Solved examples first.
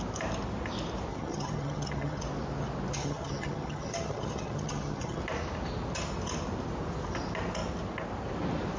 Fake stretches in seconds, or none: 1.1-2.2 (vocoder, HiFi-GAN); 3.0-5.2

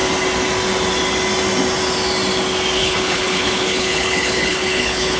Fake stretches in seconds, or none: 2.8-5.2 (codec, HILCodec)

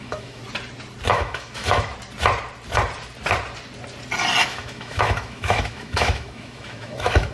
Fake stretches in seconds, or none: 0.0-0.4 (autoencoder, DAC-VAE); 1.1-1.9; 4.4-7.3